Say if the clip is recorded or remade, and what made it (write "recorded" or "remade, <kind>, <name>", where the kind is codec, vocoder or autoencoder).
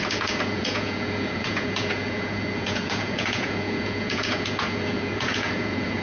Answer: remade, vocoder, Vocos